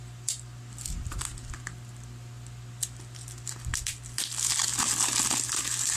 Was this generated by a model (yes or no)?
no